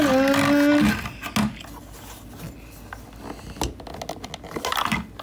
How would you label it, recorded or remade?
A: recorded